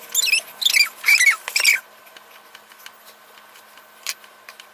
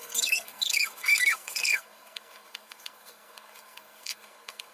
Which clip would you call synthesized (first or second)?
second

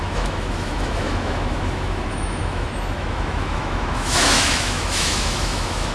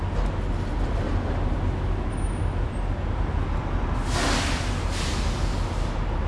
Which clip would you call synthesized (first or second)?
first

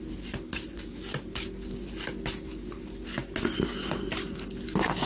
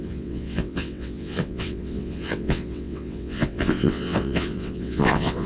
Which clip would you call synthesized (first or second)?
second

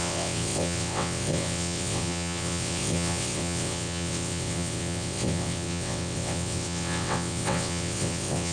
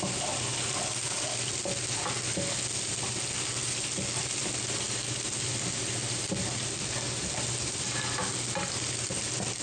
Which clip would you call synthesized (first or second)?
first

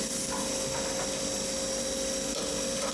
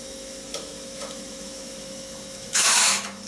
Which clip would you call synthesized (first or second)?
second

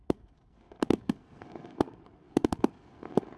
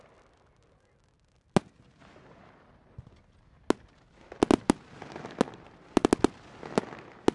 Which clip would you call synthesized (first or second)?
first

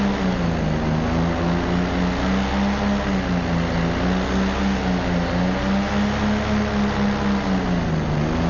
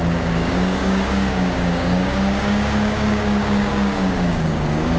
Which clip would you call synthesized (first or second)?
second